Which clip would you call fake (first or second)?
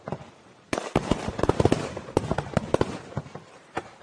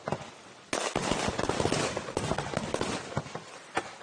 first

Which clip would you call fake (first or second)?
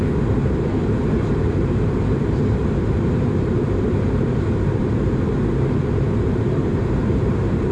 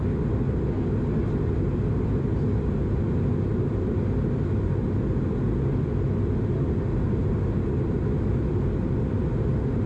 first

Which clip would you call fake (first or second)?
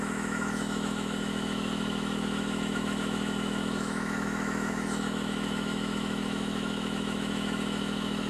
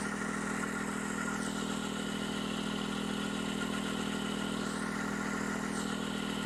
first